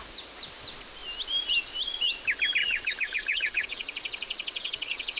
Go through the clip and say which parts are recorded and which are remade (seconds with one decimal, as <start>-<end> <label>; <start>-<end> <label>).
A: 0.0-2.6 recorded; 2.6-5.2 remade